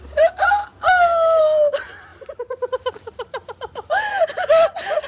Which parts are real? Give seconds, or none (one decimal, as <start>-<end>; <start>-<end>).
0.7-1.4; 2.1-2.9; 3.4-4.1